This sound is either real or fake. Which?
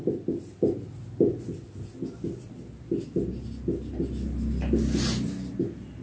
real